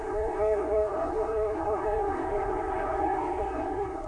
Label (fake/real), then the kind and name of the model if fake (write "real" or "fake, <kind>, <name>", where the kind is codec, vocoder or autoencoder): fake, codec, SNAC